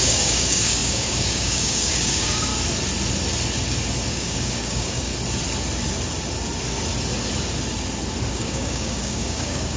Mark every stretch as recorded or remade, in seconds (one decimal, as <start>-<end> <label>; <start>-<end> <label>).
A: 0.0-2.5 remade; 2.5-4.1 recorded; 4.1-5.1 remade; 5.1-8.3 recorded; 8.3-9.8 remade